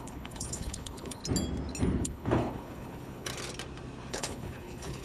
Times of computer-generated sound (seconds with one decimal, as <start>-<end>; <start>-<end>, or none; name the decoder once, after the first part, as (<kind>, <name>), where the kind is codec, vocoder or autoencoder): 0.0-1.2 (codec, HILCodec); 2.0-3.3; 4.1-5.0

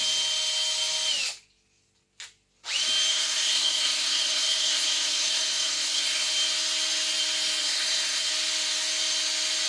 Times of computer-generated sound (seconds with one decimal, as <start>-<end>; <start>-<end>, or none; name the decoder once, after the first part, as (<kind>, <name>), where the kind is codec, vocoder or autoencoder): 3.1-6.3 (codec, SNAC); 7.6-8.3

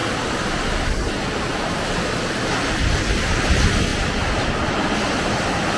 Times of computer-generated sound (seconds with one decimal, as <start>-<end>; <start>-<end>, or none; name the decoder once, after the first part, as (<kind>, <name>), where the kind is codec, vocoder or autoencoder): none